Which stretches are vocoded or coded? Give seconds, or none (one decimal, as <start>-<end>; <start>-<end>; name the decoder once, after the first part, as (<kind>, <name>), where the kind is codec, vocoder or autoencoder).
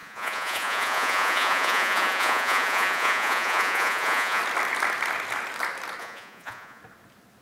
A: 0.0-4.4 (vocoder, Vocos); 6.0-6.8